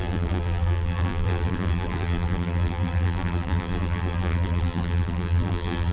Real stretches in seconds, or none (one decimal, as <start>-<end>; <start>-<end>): none